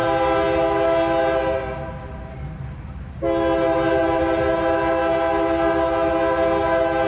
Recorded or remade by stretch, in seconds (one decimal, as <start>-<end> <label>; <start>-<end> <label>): 0.0-7.1 recorded